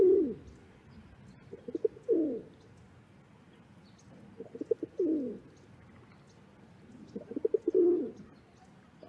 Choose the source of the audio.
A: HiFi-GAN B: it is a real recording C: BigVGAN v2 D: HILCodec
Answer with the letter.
B